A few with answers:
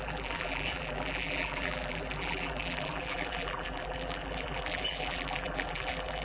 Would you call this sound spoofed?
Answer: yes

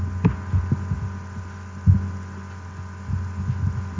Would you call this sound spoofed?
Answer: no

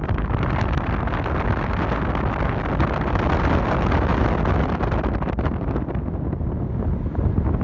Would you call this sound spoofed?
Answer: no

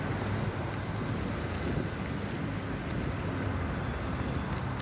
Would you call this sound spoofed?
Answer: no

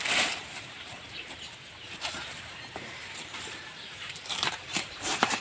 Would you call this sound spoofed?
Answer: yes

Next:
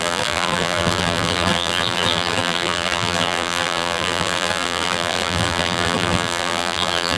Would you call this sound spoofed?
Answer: yes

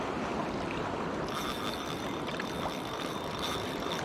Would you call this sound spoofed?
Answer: no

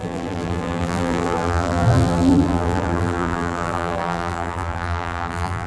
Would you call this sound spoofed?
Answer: yes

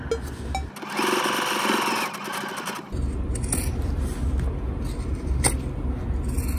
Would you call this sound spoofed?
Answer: no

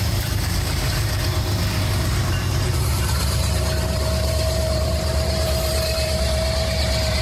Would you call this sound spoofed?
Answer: yes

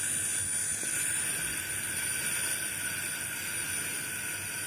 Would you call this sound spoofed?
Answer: no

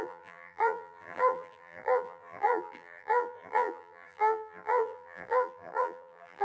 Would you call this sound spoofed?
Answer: yes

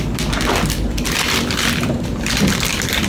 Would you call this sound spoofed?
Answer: yes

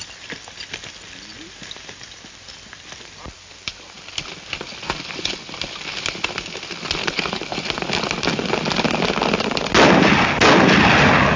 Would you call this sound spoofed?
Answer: no